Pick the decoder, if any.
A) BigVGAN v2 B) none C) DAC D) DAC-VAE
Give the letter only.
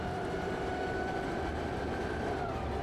A